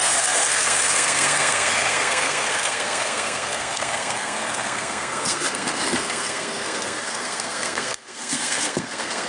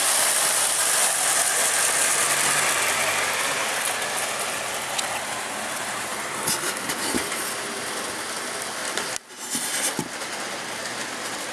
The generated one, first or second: first